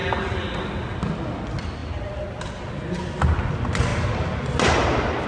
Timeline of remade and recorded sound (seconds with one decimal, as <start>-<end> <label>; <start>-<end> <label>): 0.0-5.3 recorded